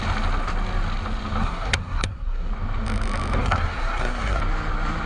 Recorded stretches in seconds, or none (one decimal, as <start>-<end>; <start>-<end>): 0.0-1.4; 2.5-3.4; 4.4-5.1